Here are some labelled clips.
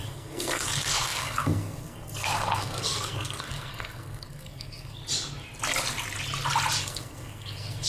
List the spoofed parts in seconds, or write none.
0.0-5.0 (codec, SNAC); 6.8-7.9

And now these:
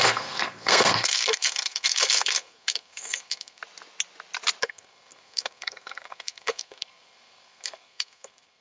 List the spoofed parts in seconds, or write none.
0.0-3.6 (codec, SNAC); 4.6-8.6